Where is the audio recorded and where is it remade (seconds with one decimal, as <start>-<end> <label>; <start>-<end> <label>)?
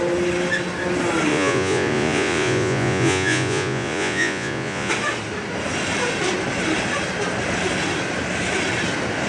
0.0-1.3 recorded; 1.3-4.9 remade; 4.9-9.3 recorded